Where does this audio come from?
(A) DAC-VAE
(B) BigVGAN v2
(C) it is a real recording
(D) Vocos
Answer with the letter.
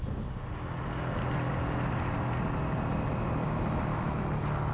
C